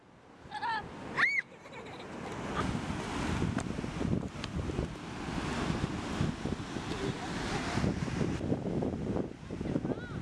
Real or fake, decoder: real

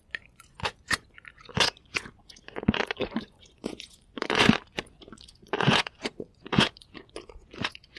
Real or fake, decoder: fake, vocoder, Vocos